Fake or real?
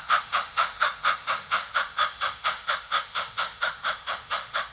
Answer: fake